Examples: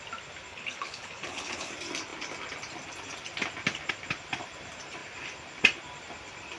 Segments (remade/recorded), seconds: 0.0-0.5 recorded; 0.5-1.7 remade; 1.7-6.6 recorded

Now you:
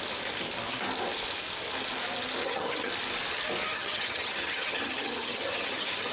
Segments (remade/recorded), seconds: 0.0-2.4 recorded; 2.4-2.9 remade; 2.9-3.6 recorded; 3.6-6.1 remade

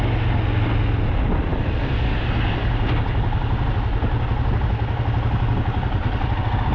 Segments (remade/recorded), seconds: 0.0-6.7 recorded

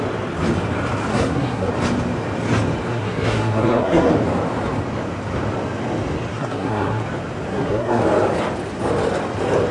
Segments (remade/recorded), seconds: 0.0-1.1 recorded; 1.1-1.7 remade; 1.7-2.9 recorded; 2.9-4.1 remade; 4.1-6.3 recorded; 6.3-7.0 remade; 7.0-7.5 recorded; 7.5-8.0 remade; 8.0-9.7 recorded